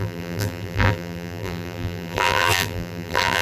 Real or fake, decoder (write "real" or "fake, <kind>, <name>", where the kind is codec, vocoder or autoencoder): fake, vocoder, BigVGAN v2